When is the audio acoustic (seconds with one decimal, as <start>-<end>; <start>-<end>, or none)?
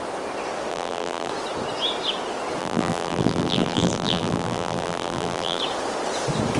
0.0-0.7; 1.3-2.6; 5.6-6.6